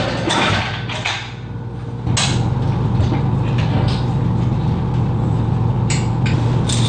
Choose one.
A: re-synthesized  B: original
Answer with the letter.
B